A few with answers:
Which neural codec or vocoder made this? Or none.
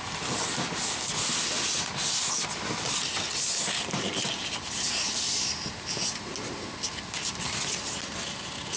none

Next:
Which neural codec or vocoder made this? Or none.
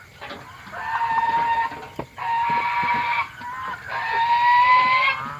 none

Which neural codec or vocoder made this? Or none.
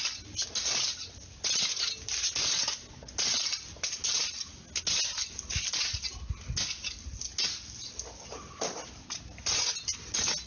none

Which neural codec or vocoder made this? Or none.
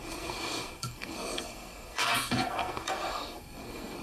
codec, SNAC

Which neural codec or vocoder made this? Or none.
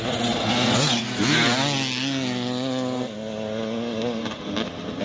none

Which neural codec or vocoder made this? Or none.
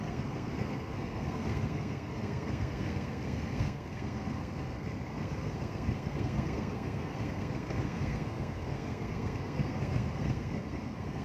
codec, SNAC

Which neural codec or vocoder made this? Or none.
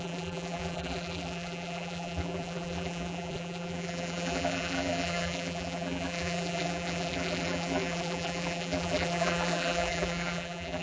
vocoder, BigVGAN v2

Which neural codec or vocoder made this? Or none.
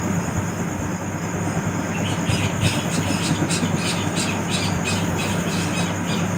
none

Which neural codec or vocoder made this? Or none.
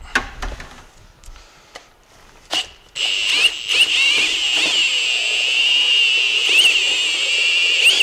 none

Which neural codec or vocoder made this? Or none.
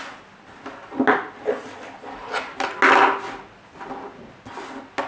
none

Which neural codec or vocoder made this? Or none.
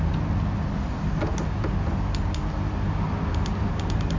none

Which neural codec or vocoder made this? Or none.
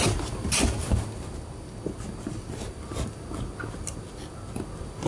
none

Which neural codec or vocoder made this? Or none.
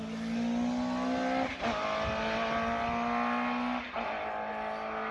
none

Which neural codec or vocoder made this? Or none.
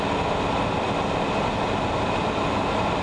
none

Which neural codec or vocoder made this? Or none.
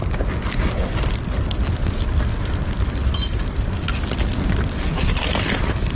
none